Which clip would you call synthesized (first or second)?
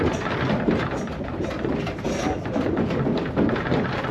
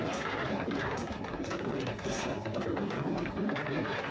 second